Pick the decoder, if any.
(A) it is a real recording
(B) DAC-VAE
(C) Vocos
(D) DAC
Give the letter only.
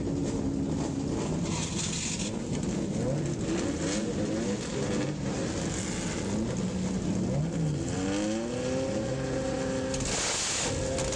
A